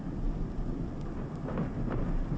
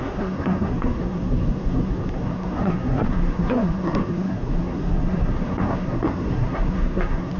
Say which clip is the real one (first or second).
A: first